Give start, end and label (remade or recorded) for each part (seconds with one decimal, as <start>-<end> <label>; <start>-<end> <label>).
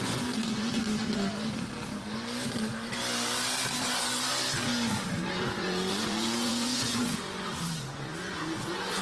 0.0-0.8 remade; 0.8-5.1 recorded; 5.1-9.0 remade